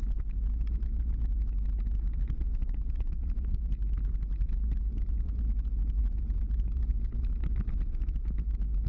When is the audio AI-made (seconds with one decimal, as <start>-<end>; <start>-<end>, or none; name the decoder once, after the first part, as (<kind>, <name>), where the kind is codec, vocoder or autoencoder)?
2.5-3.5 (vocoder, BigVGAN v2); 4.3-5.4; 6.0-6.9